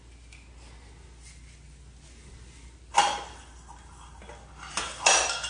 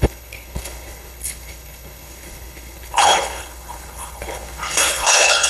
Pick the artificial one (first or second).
second